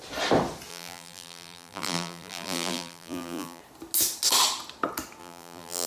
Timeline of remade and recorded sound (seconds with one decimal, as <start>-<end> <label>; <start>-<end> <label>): 0.0-0.7 recorded; 0.7-3.6 remade; 3.6-5.2 recorded; 5.2-5.9 remade